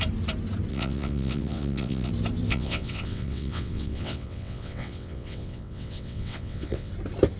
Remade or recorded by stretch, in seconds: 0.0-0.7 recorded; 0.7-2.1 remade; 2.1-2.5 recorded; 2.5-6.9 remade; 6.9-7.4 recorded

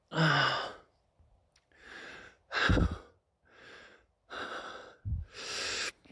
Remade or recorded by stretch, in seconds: 0.0-6.1 recorded

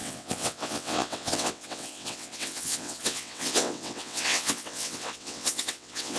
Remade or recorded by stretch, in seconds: 0.0-6.2 remade

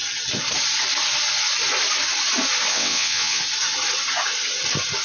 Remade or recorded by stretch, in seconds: 0.0-2.7 recorded; 2.7-3.4 remade; 3.4-5.0 recorded